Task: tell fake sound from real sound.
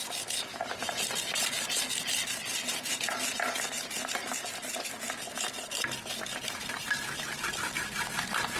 real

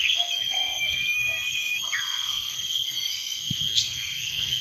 fake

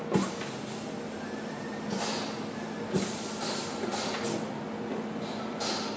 real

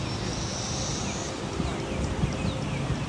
real